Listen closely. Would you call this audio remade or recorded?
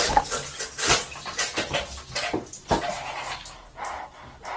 recorded